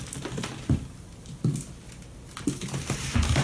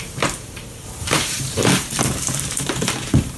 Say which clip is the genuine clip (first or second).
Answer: first